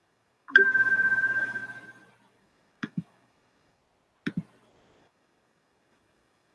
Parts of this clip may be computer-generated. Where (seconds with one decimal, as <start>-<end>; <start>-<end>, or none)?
0.0-1.6; 2.3-3.8; 5.0-6.5